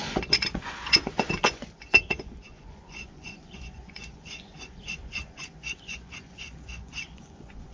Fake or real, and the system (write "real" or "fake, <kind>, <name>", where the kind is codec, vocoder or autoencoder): fake, vocoder, Vocos